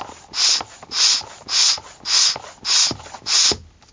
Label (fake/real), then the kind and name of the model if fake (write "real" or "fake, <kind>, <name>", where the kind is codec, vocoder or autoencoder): real